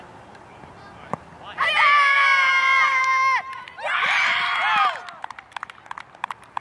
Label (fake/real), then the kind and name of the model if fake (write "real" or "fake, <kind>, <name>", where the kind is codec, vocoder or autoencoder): real